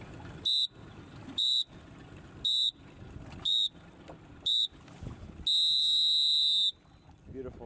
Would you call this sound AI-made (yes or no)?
no